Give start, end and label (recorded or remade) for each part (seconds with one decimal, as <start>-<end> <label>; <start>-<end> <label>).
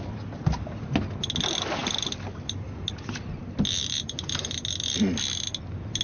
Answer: 0.0-6.0 recorded